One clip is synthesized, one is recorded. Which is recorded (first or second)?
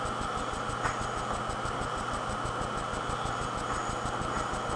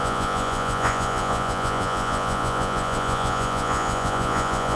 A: first